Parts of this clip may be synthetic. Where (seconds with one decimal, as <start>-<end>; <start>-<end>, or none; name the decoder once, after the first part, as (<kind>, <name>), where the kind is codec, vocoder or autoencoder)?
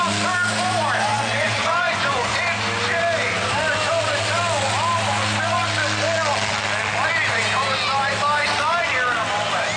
1.1-2.3 (vocoder, Vocos)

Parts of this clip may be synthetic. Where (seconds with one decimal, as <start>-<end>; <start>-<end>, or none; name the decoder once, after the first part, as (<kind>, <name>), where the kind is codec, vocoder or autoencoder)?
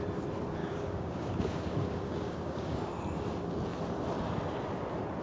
0.6-2.9 (codec, DAC)